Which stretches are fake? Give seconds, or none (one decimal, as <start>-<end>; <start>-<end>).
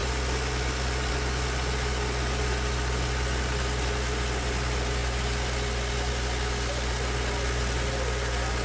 none